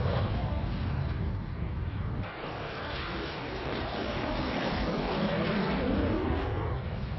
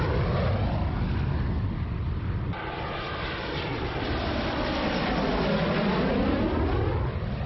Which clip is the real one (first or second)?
second